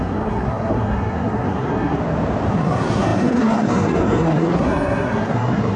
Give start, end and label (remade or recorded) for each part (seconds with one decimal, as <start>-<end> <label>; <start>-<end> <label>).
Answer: 0.0-2.0 remade; 2.0-2.5 recorded; 2.5-5.8 remade